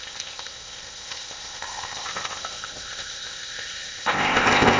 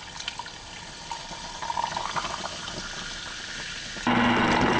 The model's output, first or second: first